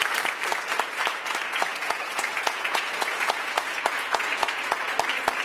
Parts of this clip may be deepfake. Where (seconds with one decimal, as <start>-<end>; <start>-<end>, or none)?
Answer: 1.7-4.9